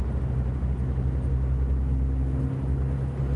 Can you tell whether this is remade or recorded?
recorded